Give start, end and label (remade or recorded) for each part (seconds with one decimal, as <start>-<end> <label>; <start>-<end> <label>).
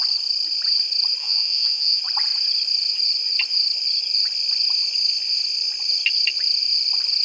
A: 0.0-1.2 recorded; 1.2-2.0 remade; 2.0-7.2 recorded